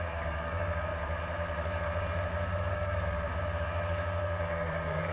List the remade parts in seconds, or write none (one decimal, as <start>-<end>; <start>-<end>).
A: 0.0-0.9; 2.3-3.3; 4.5-5.1